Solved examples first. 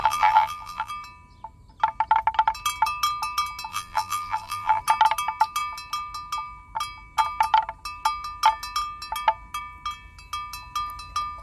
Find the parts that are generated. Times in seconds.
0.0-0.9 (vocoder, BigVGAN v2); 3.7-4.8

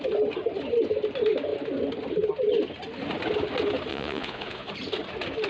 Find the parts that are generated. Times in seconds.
3.9-4.7 (vocoder, Vocos)

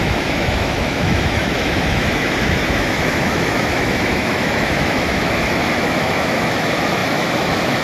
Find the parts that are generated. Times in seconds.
0.0-7.8 (autoencoder, DAC-VAE)

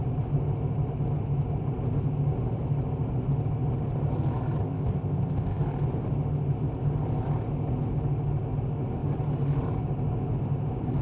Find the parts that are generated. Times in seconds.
4.6-5.6 (codec, ZipCodec)

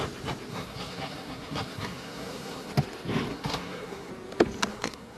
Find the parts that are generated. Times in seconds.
0.5-2.7 (codec, SNAC); 3.3-4.1; 4.7-5.2

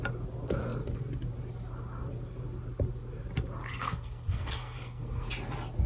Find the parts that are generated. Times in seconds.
3.7-5.3 (codec, SNAC)

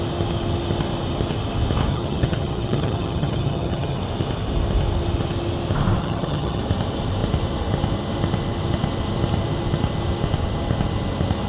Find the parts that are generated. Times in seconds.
1.9-4.0 (vocoder, HiFi-GAN); 6.0-6.6

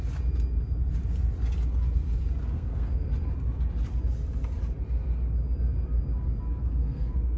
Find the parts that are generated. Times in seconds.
2.4-3.1 (codec, SNAC); 6.6-7.4